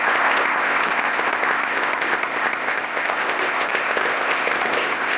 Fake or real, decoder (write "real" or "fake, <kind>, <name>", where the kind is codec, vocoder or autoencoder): fake, codec, ZipCodec